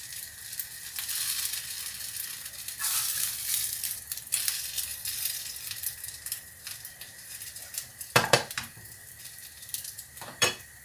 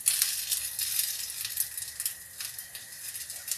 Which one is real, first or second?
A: second